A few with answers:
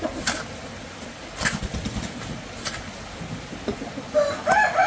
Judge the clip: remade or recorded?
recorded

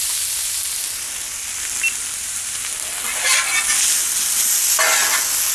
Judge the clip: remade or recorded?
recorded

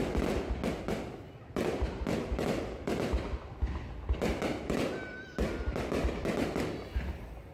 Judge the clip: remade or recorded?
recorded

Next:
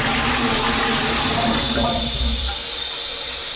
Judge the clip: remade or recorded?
recorded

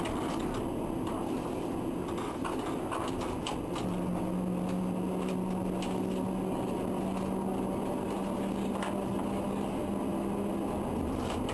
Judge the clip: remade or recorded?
recorded